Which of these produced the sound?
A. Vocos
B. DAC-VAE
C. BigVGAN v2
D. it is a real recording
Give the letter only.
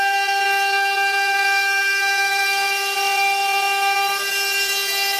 D